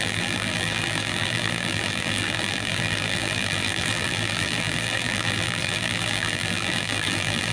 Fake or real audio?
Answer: fake